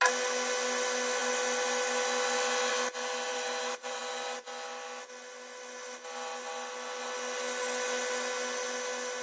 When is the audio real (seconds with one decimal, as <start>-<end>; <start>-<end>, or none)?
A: 0.0-3.3; 4.0-9.2